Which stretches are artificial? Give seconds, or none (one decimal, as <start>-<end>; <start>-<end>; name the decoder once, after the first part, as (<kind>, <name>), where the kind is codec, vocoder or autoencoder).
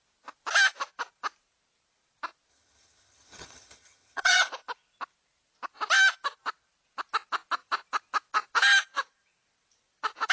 2.5-4.5 (vocoder, HiFi-GAN)